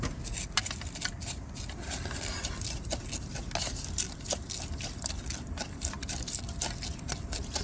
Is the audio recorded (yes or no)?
yes